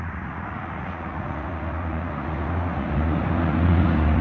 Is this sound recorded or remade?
remade